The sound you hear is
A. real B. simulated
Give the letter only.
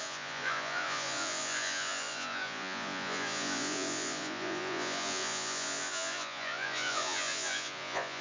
B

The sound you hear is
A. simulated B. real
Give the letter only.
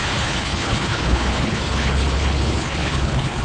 A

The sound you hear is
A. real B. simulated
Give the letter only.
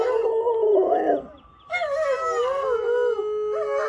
A